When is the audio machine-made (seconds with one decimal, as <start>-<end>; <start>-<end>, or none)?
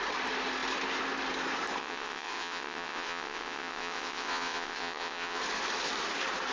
1.8-5.4